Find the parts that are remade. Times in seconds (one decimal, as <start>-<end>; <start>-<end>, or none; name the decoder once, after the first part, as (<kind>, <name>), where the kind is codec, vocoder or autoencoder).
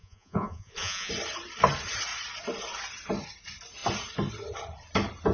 0.0-1.1 (vocoder, Vocos)